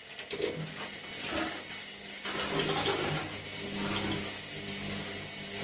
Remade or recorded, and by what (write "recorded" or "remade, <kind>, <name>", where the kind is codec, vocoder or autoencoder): recorded